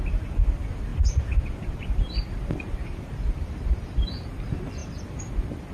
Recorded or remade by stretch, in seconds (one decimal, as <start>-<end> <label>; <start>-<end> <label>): 0.0-5.7 recorded